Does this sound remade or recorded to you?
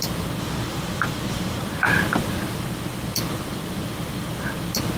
recorded